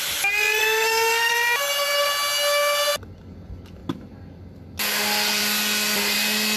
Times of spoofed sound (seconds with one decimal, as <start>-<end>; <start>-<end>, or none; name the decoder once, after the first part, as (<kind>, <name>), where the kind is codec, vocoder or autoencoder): 0.6-1.3 (codec, SNAC)

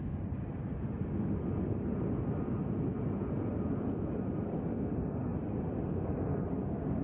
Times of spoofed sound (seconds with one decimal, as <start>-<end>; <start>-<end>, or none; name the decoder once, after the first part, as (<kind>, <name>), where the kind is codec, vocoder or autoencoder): none